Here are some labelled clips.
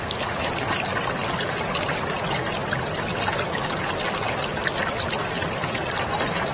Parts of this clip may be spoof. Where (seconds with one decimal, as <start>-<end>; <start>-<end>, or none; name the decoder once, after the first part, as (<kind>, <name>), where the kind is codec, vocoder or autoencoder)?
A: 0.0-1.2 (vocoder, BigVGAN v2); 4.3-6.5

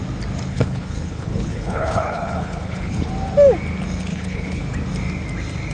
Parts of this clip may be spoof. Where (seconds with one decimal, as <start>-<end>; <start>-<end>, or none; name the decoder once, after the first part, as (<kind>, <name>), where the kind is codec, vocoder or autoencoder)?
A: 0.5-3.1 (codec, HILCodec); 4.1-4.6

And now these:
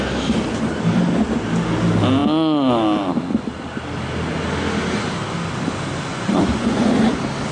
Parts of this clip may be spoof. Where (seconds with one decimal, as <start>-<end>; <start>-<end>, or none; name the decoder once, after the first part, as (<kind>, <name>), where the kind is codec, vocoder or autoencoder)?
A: 6.1-6.9 (vocoder, Vocos)

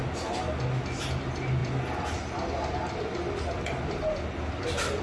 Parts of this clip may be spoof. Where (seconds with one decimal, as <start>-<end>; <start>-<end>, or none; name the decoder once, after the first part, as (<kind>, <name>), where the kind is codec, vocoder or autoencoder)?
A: none